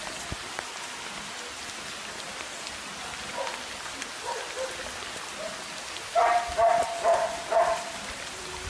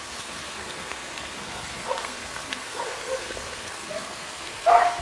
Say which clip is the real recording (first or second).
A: first